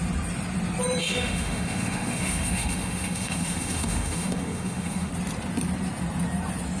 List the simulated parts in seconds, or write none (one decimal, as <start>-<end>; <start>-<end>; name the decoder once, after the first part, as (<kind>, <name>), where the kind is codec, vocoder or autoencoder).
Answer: 1.0-5.1 (autoencoder, DAC-VAE)